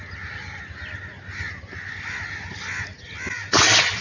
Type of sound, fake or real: real